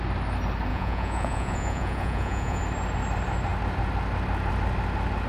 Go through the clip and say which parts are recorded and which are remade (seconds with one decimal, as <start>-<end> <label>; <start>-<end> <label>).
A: 0.0-0.7 recorded; 0.7-2.6 remade; 2.6-5.3 recorded